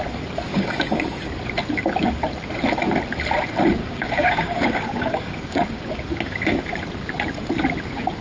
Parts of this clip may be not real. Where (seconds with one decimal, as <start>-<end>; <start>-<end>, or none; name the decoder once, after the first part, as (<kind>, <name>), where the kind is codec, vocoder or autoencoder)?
0.5-1.2 (codec, DAC); 3.8-6.6

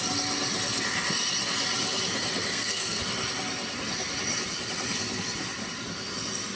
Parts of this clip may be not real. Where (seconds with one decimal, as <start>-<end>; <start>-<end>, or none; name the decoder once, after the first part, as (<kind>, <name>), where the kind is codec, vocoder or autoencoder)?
2.5-3.0 (codec, SNAC)

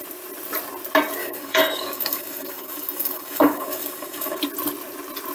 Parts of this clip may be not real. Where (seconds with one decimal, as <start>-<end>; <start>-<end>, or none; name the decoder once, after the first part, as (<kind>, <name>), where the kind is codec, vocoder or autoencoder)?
1.2-4.4 (codec, DAC)

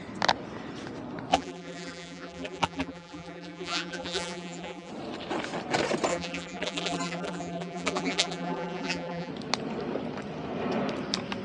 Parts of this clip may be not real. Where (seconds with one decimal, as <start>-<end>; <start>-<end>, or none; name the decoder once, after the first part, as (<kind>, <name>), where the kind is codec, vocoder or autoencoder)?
1.3-4.9 (vocoder, BigVGAN v2); 6.1-9.3

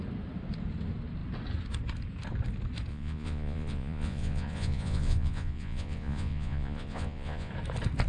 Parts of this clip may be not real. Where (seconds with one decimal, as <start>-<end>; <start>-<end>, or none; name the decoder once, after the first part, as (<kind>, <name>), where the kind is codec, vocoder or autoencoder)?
2.9-7.5 (vocoder, Vocos)

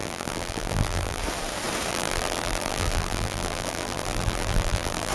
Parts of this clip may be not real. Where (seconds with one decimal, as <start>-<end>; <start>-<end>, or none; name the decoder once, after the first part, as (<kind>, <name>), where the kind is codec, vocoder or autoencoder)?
0.0-1.2 (vocoder, BigVGAN v2); 1.9-5.1

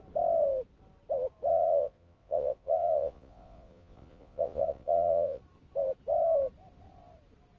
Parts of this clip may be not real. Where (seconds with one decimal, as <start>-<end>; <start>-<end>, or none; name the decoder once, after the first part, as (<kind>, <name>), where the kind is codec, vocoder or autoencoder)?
1.5-5.4 (vocoder, Vocos)